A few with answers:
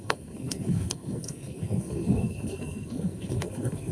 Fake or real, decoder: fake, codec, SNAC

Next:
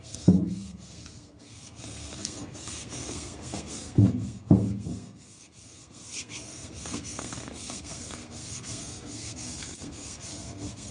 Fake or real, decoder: fake, codec, SNAC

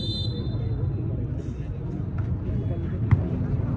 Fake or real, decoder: real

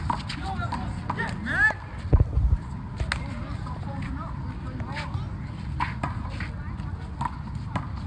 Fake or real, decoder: real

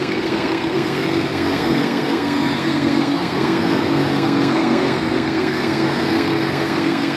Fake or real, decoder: fake, codec, SNAC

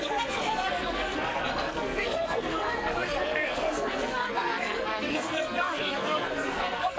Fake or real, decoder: fake, codec, SNAC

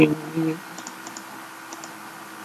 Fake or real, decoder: real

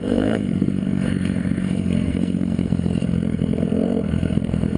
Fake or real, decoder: fake, codec, SNAC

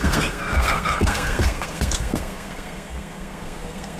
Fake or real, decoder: fake, codec, SNAC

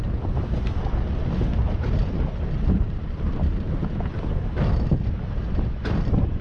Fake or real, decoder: real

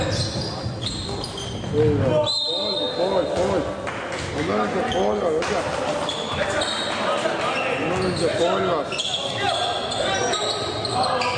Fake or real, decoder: real